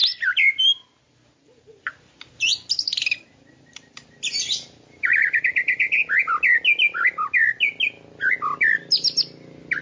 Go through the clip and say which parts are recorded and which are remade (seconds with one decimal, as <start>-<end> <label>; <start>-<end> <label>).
0.0-9.8 recorded